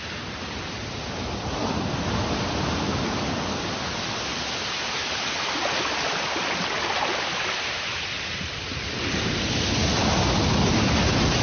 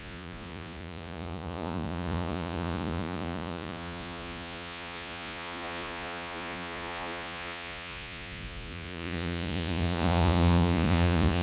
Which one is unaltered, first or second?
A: first